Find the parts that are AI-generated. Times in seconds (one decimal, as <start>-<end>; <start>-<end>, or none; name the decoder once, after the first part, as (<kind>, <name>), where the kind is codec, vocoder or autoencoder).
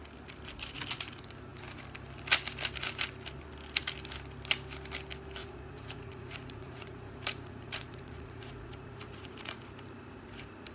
5.4-9.6 (vocoder, Vocos)